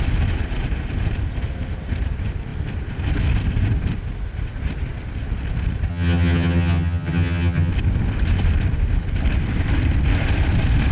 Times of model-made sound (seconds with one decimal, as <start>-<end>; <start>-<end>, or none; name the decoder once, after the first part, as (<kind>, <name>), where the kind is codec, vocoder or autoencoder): 5.9-7.7 (vocoder, HiFi-GAN)